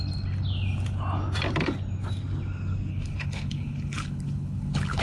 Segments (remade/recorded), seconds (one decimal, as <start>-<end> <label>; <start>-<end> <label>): 0.0-2.9 recorded; 2.9-5.0 remade